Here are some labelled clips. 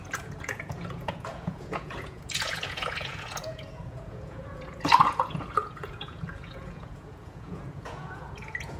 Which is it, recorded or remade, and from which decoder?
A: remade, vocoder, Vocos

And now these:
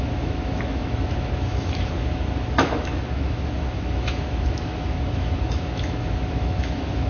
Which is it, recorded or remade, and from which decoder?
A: remade, autoencoder, DAC-VAE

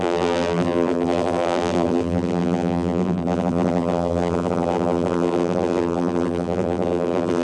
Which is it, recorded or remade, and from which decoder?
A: remade, vocoder, BigVGAN v2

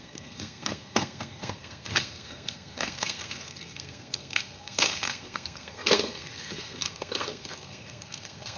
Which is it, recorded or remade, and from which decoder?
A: remade, codec, SNAC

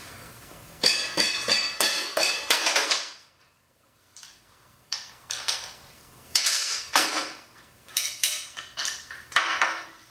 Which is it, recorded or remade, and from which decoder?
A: remade, codec, SNAC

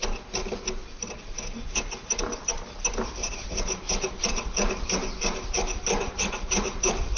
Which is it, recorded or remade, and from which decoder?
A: recorded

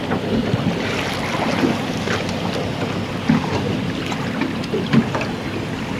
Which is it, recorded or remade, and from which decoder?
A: recorded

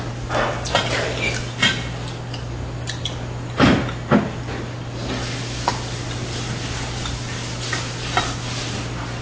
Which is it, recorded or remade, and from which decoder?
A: recorded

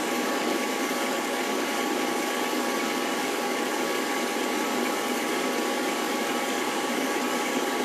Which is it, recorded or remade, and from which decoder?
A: remade, codec, DAC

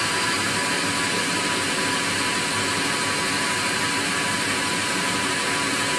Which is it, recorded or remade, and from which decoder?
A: recorded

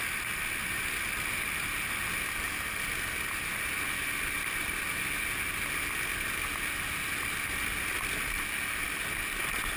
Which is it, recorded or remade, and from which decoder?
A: recorded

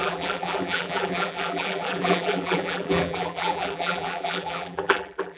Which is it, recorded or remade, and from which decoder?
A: remade, vocoder, BigVGAN v2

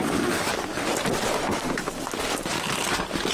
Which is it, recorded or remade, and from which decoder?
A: recorded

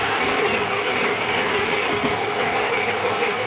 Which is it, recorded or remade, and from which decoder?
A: remade, codec, DAC